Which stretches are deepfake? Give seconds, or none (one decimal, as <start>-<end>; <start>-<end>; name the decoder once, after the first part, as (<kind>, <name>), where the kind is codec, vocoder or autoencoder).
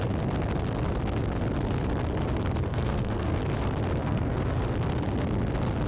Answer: 2.7-3.4 (codec, SNAC); 4.0-4.6